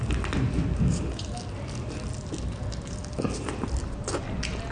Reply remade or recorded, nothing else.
recorded